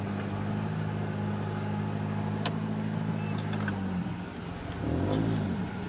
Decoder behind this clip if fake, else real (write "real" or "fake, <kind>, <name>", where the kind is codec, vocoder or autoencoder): real